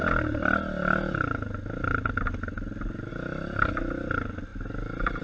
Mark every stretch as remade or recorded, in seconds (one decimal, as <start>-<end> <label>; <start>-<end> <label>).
0.0-5.2 recorded

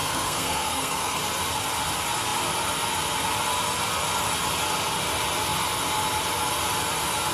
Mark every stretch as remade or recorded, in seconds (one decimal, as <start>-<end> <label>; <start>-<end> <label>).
0.0-1.2 remade; 1.2-7.3 recorded